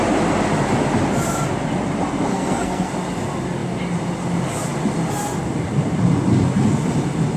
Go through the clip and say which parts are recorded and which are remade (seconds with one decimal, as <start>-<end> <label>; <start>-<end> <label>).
0.0-2.3 recorded; 2.3-2.9 remade; 2.9-7.4 recorded